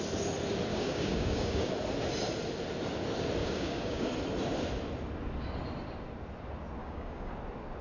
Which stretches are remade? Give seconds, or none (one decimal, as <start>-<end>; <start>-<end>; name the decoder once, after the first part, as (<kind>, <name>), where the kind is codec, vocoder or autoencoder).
0.7-1.7 (codec, DAC); 3.4-4.1; 6.8-7.3